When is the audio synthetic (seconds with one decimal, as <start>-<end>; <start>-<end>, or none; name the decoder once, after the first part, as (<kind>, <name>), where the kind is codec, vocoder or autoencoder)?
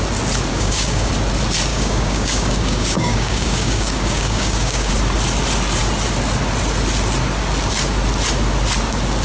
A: 0.5-1.1 (codec, DAC); 1.7-4.9